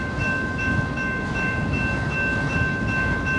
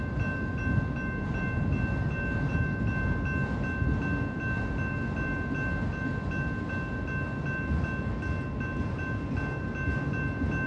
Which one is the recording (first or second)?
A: second